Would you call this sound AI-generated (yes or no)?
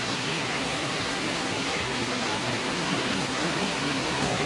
yes